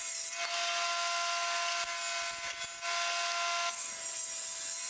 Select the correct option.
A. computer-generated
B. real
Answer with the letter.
B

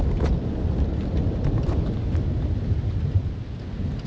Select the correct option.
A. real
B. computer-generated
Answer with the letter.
A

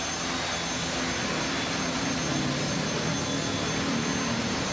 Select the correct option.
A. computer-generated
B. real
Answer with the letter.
B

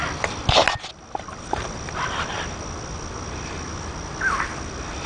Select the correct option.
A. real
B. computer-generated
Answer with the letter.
A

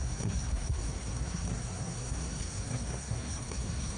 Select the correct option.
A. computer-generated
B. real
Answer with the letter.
A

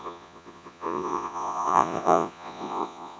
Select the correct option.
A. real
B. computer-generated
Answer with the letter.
B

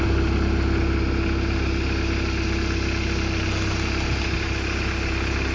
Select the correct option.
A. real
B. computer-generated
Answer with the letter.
A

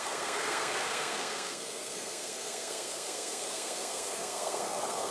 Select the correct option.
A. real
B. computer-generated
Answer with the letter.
B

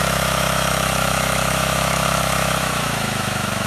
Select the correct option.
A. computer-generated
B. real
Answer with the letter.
A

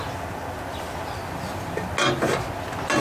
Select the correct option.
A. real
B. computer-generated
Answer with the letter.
A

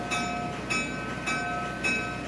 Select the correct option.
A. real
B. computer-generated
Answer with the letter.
A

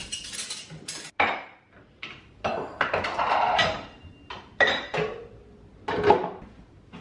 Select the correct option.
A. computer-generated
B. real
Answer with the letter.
B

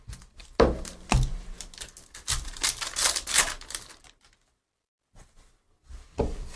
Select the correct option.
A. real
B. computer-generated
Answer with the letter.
A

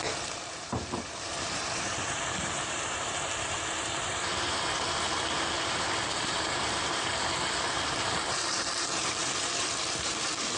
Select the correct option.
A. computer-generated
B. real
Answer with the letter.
A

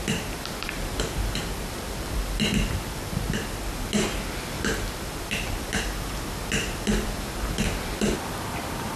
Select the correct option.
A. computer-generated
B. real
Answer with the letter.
B